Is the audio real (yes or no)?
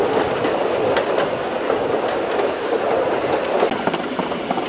yes